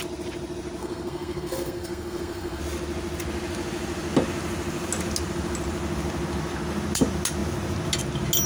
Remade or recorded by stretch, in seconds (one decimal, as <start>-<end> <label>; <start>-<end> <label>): 0.0-0.8 recorded; 0.8-2.6 remade; 2.6-8.5 recorded